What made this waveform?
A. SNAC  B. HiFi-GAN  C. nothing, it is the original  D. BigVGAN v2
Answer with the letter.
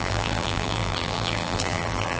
D